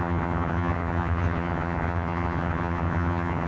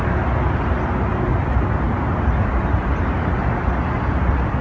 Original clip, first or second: second